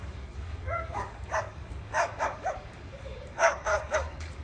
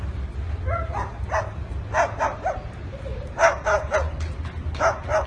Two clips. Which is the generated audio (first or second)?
first